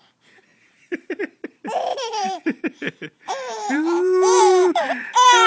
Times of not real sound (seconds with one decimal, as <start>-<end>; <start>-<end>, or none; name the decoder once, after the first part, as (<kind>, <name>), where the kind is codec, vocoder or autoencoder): 0.5-1.2 (vocoder, BigVGAN v2); 1.9-5.5